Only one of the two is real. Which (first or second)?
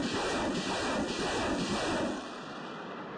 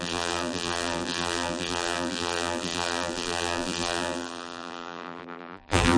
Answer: first